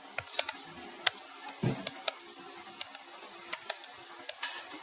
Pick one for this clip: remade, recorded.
recorded